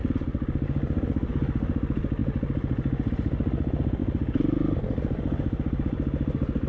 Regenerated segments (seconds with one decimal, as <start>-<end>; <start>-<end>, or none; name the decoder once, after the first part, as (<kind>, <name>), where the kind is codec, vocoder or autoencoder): none